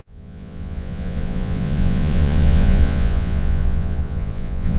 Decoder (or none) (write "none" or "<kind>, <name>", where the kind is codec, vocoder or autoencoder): vocoder, Vocos